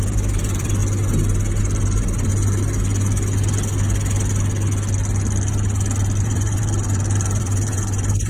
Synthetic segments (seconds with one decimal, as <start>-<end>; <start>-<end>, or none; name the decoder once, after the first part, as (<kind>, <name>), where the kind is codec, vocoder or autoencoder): 0.0-0.8 (vocoder, BigVGAN v2); 1.6-2.3; 6.2-8.3